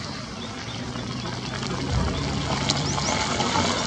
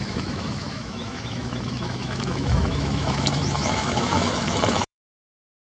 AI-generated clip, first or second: second